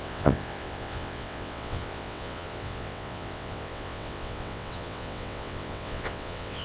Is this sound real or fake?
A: fake